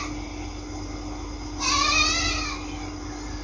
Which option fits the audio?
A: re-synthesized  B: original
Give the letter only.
B